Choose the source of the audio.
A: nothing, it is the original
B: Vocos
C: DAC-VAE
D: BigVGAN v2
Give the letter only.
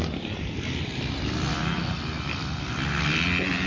A